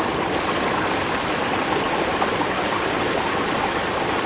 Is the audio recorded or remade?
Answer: recorded